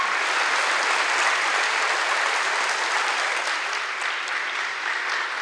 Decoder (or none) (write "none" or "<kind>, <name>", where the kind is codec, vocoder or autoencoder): none